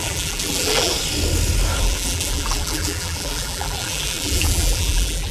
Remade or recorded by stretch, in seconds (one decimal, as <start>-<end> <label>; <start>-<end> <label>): 0.0-0.9 remade; 0.9-1.8 recorded; 1.8-5.3 remade